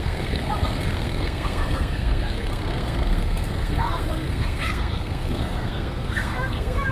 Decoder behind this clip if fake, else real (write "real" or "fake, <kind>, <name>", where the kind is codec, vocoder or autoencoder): fake, codec, SNAC